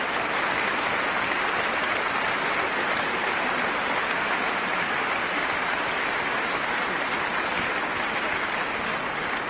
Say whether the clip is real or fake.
real